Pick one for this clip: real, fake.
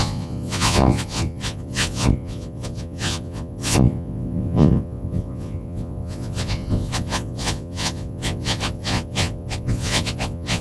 fake